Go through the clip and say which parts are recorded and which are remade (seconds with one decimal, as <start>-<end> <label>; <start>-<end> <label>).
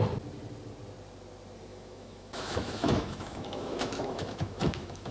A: 0.0-1.7 recorded; 1.7-5.1 remade